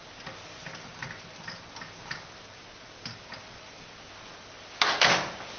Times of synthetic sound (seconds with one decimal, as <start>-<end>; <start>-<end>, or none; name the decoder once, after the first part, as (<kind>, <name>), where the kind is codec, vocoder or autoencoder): none